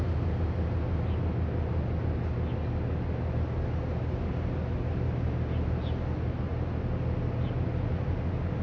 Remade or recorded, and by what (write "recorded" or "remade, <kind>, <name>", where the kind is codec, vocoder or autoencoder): recorded